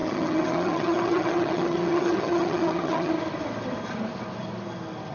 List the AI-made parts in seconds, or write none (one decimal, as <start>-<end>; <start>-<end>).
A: 0.0-3.1